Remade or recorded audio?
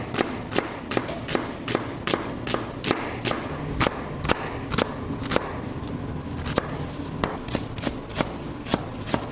recorded